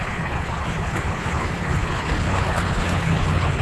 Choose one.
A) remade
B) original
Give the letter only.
A